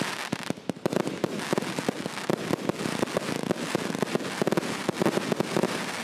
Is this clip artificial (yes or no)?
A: no